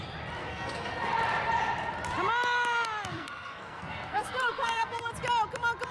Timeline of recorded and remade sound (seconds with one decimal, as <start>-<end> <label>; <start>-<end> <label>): 0.0-0.4 recorded; 0.4-0.9 remade; 0.9-3.1 recorded; 3.1-5.1 remade; 5.1-5.9 recorded